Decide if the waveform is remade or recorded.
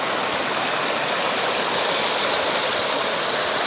recorded